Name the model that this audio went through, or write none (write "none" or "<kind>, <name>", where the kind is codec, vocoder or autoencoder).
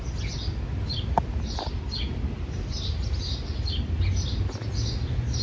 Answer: none